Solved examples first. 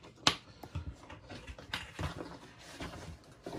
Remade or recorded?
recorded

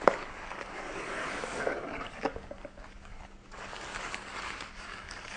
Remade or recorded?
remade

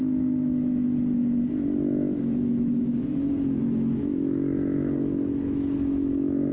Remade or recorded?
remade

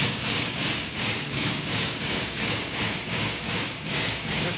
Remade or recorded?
remade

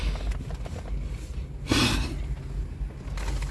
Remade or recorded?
recorded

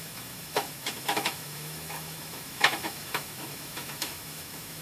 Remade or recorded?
remade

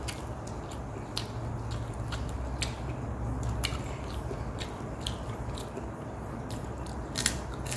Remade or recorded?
recorded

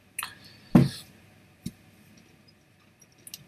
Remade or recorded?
recorded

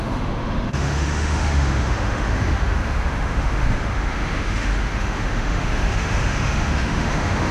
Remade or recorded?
remade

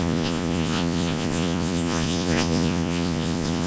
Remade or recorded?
remade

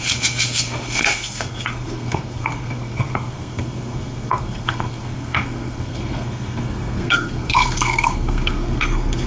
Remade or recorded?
remade